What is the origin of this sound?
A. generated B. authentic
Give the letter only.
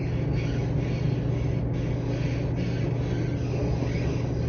B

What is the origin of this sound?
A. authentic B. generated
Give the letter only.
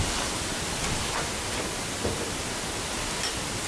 A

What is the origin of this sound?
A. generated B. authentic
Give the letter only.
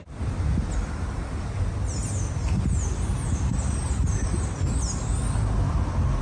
B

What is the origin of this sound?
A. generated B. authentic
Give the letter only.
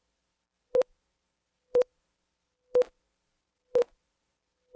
A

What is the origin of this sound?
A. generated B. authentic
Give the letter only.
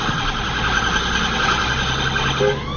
B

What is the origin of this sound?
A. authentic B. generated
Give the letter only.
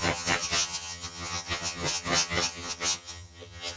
B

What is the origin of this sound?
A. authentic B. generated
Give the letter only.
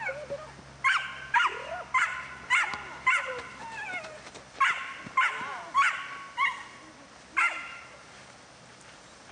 A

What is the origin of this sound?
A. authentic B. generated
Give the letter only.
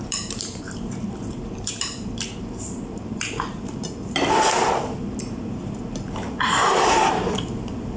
B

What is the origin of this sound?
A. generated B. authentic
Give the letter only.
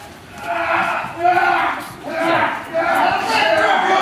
A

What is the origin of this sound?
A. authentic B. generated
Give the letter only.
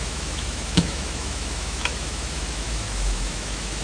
B